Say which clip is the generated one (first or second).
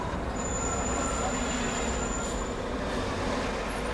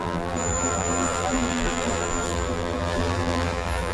second